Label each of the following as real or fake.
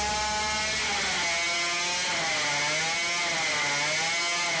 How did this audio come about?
real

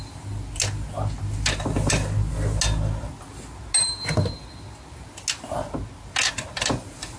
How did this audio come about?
real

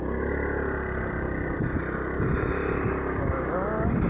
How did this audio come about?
real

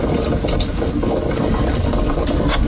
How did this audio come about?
real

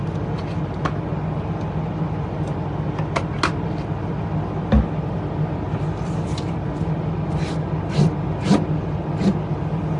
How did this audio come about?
real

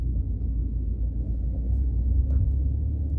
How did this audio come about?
fake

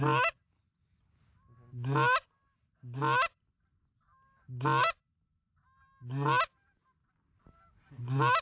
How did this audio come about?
real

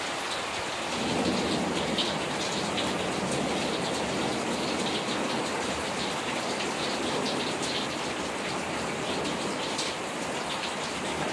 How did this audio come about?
real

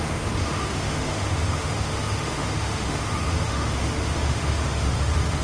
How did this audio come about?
fake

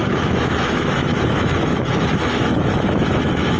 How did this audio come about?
fake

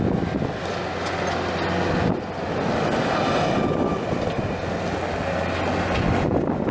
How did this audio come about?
real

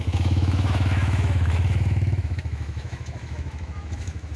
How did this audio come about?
fake